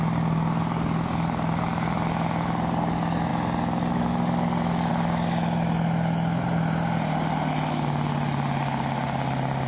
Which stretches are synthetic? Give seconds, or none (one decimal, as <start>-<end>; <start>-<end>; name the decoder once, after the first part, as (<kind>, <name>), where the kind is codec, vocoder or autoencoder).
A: none